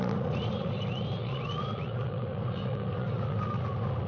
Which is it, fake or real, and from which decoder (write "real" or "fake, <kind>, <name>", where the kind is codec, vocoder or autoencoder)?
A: fake, vocoder, Vocos